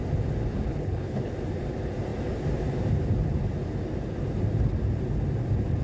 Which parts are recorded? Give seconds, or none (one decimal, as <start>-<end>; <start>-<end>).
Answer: 0.0-0.7; 1.3-5.8